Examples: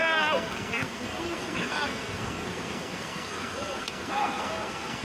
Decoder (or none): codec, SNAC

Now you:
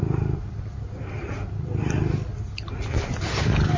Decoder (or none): none